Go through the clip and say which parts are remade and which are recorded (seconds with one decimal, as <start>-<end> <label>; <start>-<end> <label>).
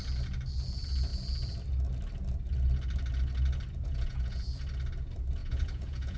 0.0-3.8 recorded; 3.8-4.6 remade; 4.6-5.4 recorded; 5.4-6.2 remade